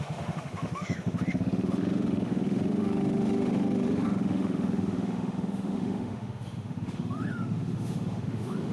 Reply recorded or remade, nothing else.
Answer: remade